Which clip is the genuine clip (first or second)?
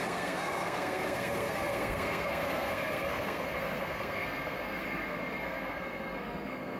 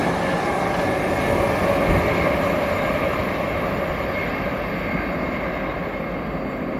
second